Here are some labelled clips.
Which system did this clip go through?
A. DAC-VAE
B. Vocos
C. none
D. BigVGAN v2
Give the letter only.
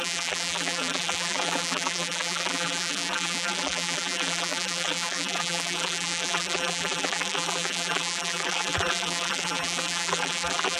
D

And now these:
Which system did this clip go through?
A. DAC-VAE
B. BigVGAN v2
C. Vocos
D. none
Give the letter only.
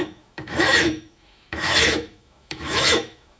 A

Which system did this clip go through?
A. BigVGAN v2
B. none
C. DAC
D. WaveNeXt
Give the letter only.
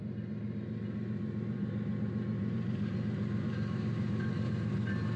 A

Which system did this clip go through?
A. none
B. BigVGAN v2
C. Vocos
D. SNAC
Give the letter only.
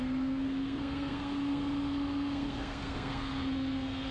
D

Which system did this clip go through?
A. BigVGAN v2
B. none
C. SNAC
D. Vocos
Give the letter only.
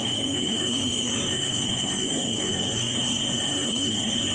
C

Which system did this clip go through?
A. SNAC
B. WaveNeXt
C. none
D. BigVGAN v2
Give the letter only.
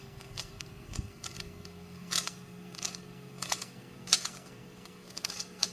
A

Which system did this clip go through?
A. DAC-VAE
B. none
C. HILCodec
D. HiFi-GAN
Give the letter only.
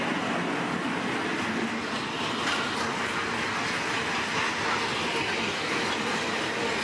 B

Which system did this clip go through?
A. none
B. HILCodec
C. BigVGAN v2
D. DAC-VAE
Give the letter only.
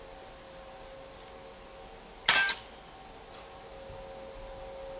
A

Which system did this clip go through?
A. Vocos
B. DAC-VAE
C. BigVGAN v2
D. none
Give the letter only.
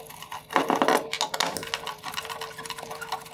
D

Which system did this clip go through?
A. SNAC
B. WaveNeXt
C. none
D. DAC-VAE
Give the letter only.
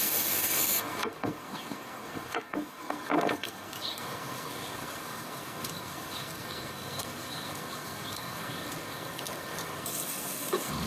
A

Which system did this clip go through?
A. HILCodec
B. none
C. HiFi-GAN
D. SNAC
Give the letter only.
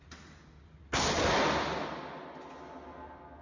B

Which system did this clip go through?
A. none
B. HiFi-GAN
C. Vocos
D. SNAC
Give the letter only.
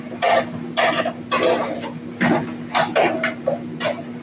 A